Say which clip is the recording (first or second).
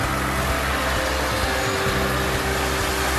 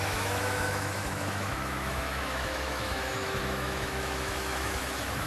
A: first